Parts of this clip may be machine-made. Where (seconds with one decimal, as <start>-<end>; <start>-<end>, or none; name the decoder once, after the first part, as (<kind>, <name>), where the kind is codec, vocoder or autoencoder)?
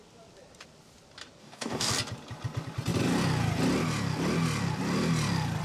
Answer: 1.4-1.9 (codec, DAC)